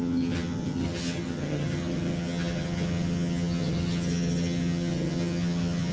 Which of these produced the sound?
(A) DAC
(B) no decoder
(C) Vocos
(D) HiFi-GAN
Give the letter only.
D